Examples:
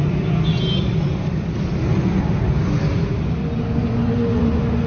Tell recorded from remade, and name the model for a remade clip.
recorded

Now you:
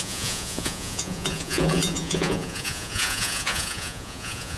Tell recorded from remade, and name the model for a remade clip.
remade, vocoder, Vocos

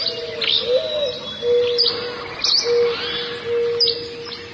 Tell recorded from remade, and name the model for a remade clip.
recorded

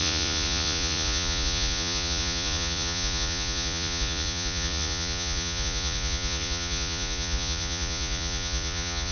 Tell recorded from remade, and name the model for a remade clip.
remade, vocoder, Vocos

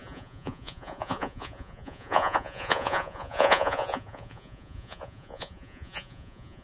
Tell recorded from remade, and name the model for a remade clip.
remade, vocoder, Vocos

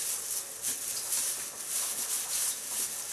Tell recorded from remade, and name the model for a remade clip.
recorded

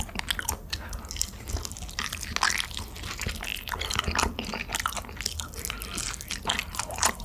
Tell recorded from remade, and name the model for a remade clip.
recorded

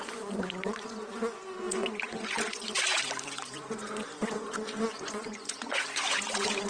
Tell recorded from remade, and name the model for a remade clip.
remade, vocoder, Vocos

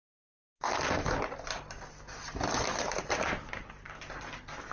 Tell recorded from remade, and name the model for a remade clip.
recorded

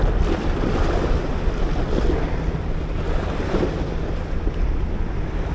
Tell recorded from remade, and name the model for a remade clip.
recorded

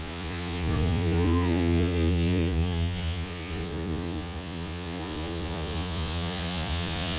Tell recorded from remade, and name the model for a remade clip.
remade, vocoder, Vocos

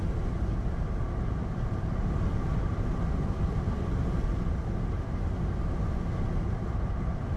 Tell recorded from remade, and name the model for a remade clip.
recorded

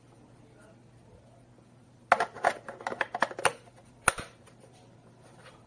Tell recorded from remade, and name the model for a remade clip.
recorded